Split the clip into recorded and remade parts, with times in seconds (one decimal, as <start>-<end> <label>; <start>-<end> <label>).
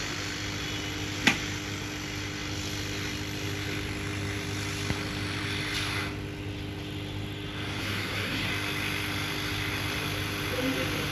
0.0-7.8 recorded; 7.8-8.5 remade; 8.5-11.1 recorded